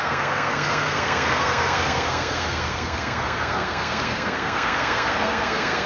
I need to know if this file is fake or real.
fake